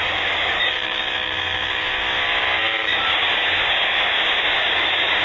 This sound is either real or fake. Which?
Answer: fake